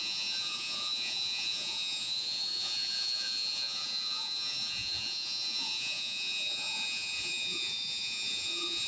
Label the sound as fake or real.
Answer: fake